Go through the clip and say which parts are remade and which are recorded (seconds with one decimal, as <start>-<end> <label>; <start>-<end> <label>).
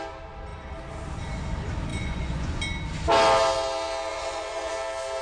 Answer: 0.0-1.9 recorded; 1.9-2.6 remade; 2.6-4.1 recorded; 4.1-4.7 remade; 4.7-5.2 recorded